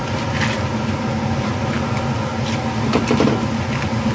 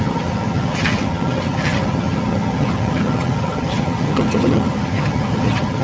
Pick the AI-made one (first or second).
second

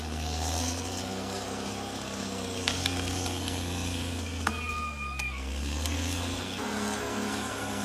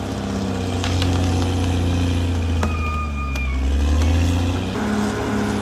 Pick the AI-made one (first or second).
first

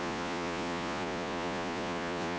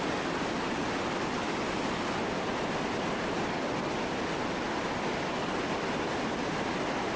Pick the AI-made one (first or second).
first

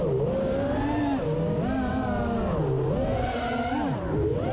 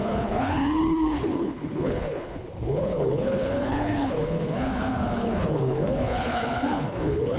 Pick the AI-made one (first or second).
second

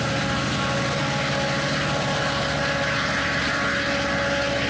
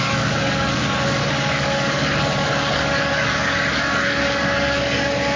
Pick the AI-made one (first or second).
second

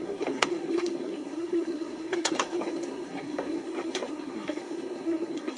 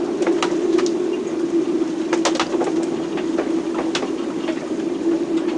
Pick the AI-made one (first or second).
first